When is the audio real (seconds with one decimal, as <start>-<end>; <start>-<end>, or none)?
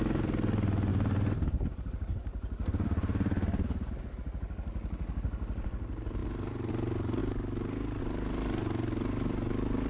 0.0-0.9; 3.9-9.9